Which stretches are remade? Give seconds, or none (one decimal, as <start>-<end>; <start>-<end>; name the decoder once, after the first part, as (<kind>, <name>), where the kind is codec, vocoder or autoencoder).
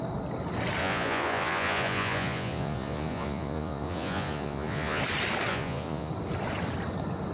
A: 0.8-5.0 (vocoder, Vocos); 5.5-6.1